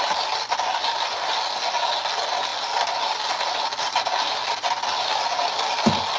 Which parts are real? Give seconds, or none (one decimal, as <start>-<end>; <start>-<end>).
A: 0.0-6.2